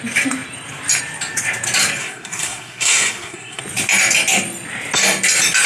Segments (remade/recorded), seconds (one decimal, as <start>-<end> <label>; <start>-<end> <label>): 0.0-2.0 recorded; 2.0-3.6 remade; 3.6-5.7 recorded